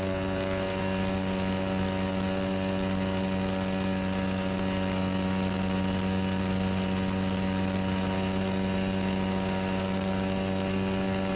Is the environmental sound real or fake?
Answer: real